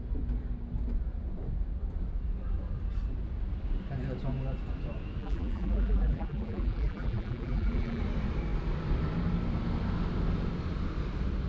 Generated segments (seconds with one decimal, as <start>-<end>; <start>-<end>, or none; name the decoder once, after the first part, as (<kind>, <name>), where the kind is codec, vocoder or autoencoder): 5.2-8.0 (vocoder, BigVGAN v2)